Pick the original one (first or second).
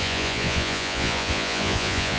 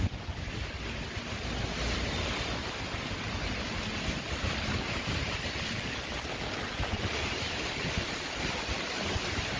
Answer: second